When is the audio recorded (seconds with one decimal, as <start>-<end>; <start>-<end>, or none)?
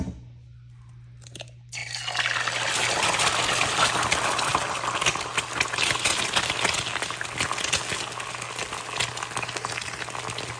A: 0.0-10.6